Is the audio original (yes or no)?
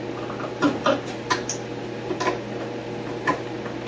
yes